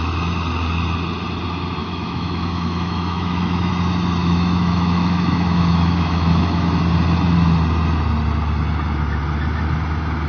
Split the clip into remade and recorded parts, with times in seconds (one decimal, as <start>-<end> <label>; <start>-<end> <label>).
0.0-1.8 recorded; 1.8-3.7 remade; 3.7-4.2 recorded; 4.2-6.7 remade; 6.7-10.3 recorded